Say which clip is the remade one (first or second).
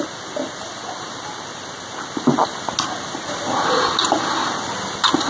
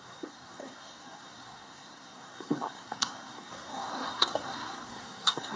second